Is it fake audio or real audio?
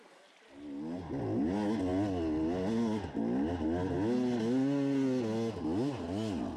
real